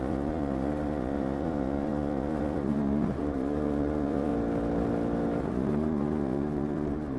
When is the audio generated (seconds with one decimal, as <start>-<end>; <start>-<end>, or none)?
0.0-4.3; 5.4-7.2